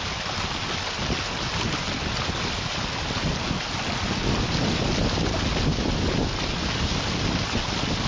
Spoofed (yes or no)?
no